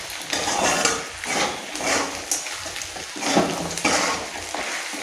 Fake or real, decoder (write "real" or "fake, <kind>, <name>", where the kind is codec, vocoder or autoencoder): real